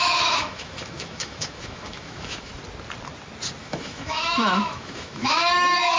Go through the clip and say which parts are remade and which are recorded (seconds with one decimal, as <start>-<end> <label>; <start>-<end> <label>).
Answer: 0.0-2.5 remade; 2.5-3.6 recorded; 3.6-6.0 remade